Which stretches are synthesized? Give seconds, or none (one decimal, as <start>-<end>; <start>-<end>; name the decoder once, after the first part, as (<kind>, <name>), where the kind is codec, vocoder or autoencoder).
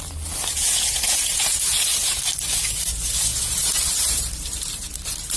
0.5-2.2 (vocoder, Vocos); 3.3-4.3